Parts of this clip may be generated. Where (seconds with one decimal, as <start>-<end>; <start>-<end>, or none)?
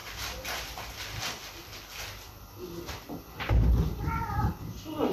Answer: none